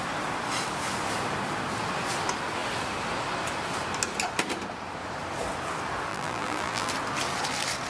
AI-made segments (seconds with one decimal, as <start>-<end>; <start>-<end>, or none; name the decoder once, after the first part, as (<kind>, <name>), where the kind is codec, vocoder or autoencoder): 6.1-6.9 (vocoder, BigVGAN v2)